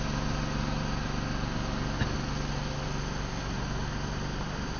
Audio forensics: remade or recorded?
recorded